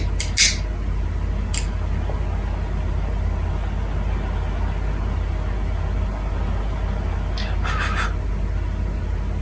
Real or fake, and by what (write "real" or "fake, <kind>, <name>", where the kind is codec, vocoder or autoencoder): real